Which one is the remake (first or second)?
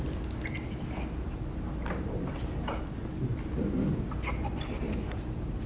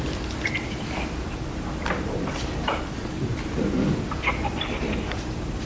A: second